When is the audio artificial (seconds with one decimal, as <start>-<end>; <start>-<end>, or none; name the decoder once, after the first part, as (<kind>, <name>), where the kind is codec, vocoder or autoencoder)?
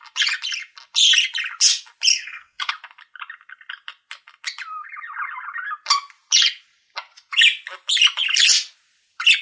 2.1-2.7 (codec, SNAC)